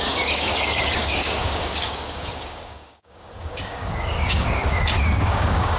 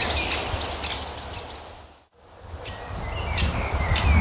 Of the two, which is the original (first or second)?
second